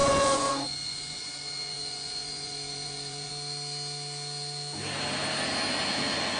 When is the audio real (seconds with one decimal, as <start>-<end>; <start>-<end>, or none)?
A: 3.3-6.4